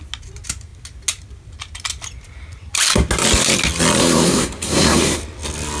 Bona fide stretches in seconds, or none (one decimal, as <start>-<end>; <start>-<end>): 0.0-4.0; 5.2-5.8